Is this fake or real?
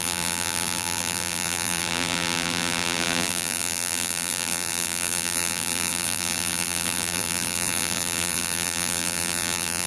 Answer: fake